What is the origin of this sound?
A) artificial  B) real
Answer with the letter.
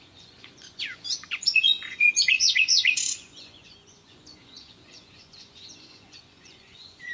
A